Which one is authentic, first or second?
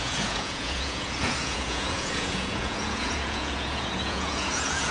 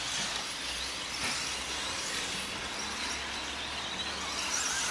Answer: second